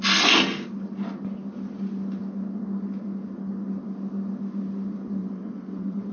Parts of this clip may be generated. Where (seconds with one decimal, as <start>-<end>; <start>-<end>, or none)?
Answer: 5.2-6.1